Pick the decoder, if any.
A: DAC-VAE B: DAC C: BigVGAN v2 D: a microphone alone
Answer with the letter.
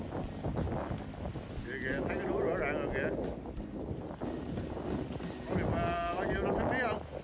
D